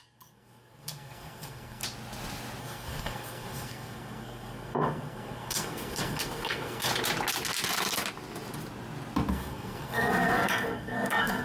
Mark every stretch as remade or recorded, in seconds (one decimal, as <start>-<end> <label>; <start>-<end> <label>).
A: 0.0-1.8 remade; 1.8-2.6 recorded; 2.6-6.9 remade; 6.9-9.3 recorded; 9.3-11.4 remade